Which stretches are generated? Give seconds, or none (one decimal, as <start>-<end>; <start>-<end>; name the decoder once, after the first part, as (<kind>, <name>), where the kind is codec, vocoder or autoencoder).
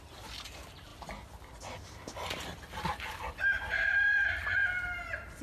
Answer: none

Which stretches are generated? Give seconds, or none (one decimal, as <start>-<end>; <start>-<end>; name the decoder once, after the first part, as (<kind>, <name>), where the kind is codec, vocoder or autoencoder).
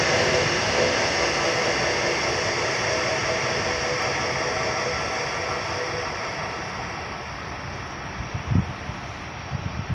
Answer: none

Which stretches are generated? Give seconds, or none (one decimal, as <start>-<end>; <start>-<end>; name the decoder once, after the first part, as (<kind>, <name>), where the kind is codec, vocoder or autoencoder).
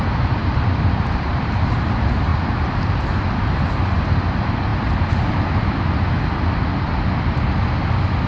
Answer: 0.4-1.7 (vocoder, BigVGAN v2); 2.3-3.1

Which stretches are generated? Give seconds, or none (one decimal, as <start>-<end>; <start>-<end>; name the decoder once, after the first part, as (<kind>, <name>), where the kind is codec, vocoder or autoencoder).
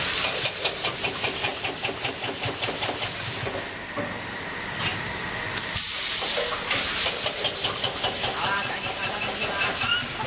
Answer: 1.5-2.1 (vocoder, BigVGAN v2); 4.9-7.4; 8.3-9.1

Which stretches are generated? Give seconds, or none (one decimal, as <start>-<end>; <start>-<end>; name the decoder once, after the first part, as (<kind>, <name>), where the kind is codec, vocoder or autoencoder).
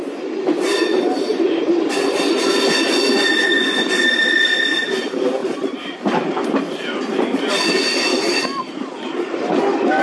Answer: 1.3-1.9 (vocoder, BigVGAN v2); 5.4-9.6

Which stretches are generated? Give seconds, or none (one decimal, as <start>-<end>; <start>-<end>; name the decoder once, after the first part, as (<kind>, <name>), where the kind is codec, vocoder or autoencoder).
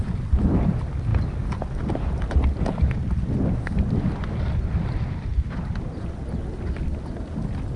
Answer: none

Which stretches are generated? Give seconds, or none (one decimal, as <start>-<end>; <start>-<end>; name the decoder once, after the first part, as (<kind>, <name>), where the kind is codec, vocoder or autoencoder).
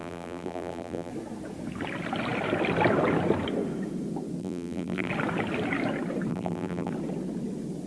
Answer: 0.0-1.1 (vocoder, BigVGAN v2); 4.4-5.1; 6.3-6.9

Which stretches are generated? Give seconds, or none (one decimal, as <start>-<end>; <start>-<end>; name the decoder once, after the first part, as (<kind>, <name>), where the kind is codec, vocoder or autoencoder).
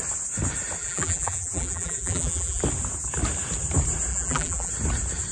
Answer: 0.8-2.6 (vocoder, BigVGAN v2); 4.1-4.7